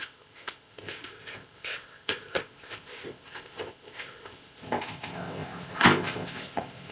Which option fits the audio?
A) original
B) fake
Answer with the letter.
B